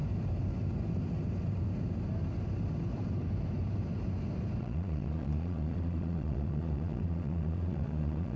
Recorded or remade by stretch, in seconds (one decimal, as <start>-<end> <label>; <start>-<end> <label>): 0.0-4.6 recorded; 4.6-8.4 remade